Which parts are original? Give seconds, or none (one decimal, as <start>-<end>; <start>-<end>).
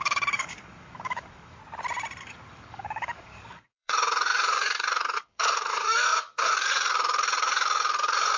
1.6-2.2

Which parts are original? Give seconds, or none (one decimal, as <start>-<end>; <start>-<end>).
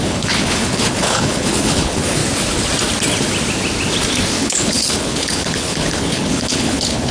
2.2-4.3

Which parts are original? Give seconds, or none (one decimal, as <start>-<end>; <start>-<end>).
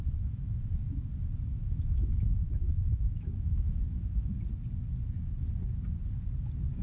0.0-1.6; 4.3-6.8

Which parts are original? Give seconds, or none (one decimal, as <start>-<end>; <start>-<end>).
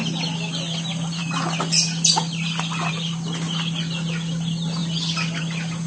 0.0-5.9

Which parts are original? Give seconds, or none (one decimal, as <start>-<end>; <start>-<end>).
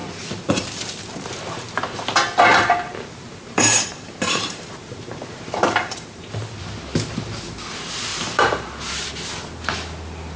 0.0-2.5; 6.2-8.1; 8.8-10.4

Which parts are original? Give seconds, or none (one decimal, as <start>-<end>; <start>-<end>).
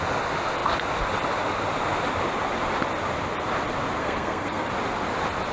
0.0-4.0; 4.7-5.5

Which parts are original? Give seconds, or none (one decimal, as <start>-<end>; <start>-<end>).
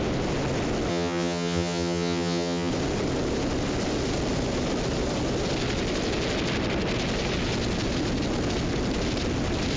0.0-0.9; 2.7-9.8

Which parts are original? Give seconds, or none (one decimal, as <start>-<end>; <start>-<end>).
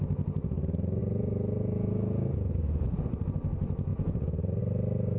0.0-1.0; 3.1-3.9; 4.6-5.2